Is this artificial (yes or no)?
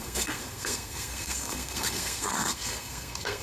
yes